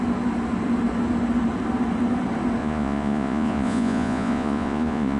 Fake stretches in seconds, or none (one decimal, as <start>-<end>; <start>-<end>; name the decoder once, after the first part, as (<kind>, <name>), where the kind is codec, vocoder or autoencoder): 2.6-5.2 (vocoder, Vocos)